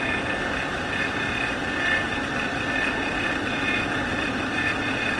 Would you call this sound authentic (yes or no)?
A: no